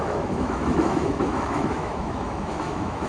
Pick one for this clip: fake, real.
fake